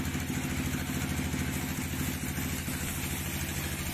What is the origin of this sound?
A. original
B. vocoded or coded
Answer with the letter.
A